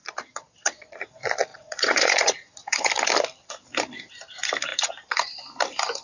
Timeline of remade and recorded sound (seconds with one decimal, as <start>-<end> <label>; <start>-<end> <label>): 0.0-1.1 remade; 1.1-1.5 recorded; 1.5-2.9 remade; 2.9-4.7 recorded; 4.7-5.4 remade; 5.4-6.0 recorded